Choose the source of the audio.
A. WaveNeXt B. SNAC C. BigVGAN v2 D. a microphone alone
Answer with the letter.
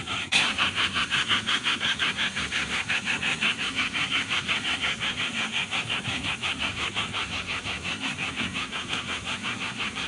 B